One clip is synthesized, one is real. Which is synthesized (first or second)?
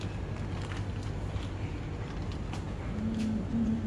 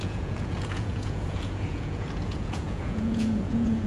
second